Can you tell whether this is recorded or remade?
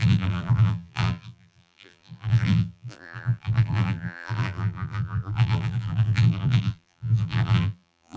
remade